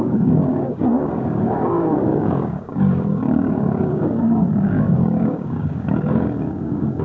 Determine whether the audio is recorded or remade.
remade